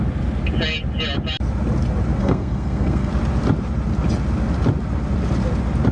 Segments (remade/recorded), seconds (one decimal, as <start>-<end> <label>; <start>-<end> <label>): 0.0-2.2 recorded; 2.2-3.1 remade; 3.1-5.9 recorded